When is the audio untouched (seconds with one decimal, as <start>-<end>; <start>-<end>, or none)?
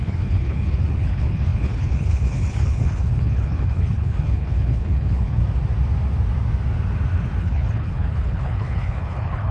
5.4-7.4